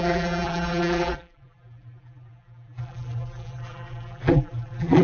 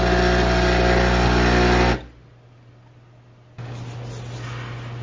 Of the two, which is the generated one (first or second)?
first